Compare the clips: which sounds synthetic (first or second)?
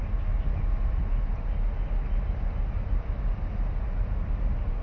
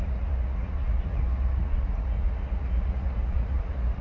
second